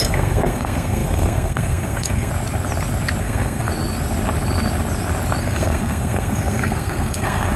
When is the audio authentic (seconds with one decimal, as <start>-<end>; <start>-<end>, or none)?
2.3-3.2; 3.7-5.4

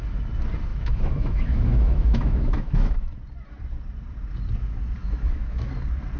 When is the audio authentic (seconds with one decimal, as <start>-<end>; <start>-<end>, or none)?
0.0-0.7; 3.1-5.0; 5.7-6.2